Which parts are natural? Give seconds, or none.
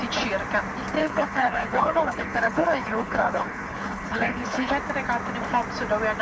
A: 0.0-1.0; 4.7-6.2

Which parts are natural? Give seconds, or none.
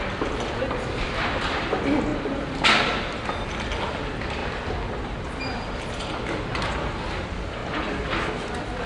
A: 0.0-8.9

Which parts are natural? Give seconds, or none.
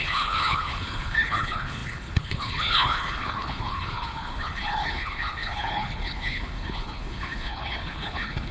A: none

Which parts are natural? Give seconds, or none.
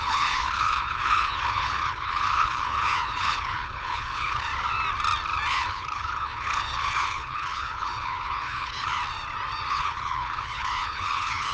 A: 4.5-5.5; 9.0-9.7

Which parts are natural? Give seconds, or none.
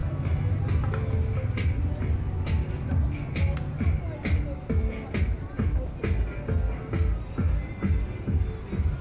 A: 0.0-9.0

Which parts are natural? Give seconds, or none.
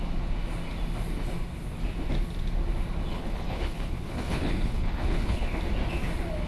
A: 0.0-3.1; 5.6-6.5